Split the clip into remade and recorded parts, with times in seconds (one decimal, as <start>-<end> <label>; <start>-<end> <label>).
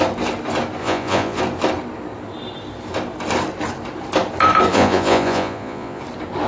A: 0.0-0.8 recorded; 0.8-1.4 remade; 1.4-4.7 recorded; 4.7-6.0 remade; 6.0-6.5 recorded